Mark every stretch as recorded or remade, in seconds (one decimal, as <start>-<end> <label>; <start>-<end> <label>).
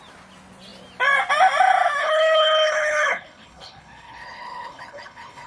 0.0-2.0 recorded; 2.0-5.5 remade